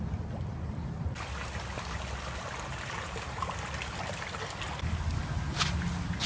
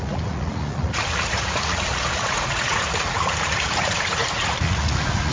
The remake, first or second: second